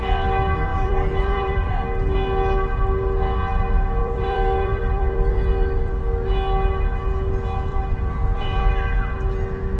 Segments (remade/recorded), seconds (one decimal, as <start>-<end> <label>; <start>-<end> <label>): 0.0-0.7 recorded; 0.7-1.7 remade; 1.7-4.0 recorded; 4.0-5.9 remade; 5.9-7.7 recorded; 7.7-8.7 remade; 8.7-9.8 recorded